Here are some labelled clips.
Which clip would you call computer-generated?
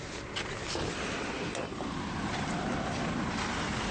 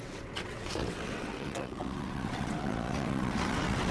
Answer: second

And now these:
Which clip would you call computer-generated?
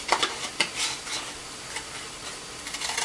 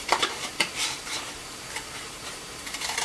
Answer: second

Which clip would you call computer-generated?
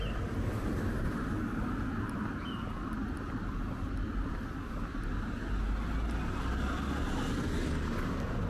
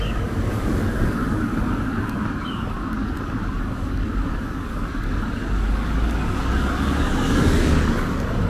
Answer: second